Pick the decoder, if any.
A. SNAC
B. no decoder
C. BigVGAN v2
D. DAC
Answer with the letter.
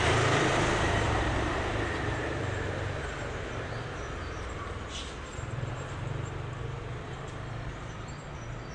C